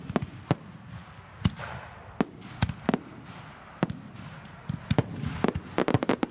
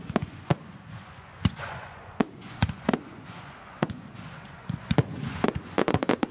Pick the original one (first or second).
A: first